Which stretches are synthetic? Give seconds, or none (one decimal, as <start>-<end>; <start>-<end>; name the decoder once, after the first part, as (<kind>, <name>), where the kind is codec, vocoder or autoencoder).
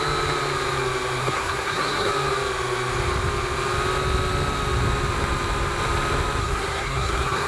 1.2-2.1 (codec, SNAC); 6.4-7.5